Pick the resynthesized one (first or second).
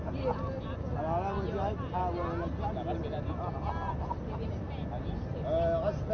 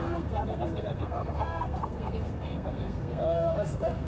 second